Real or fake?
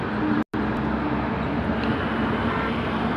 real